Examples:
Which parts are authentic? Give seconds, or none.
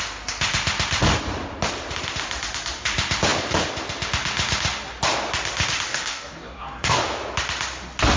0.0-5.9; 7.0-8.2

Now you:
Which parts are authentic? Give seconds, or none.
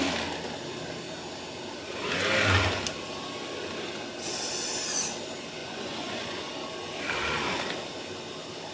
0.0-5.6; 6.5-8.7